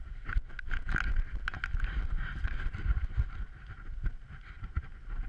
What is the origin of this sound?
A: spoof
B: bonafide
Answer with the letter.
B